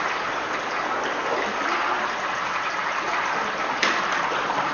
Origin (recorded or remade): recorded